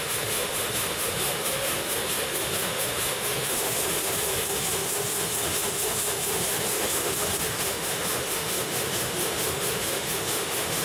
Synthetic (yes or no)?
yes